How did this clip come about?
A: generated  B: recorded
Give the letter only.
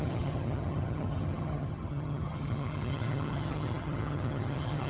A